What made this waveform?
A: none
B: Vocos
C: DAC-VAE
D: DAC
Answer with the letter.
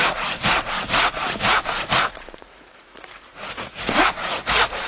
B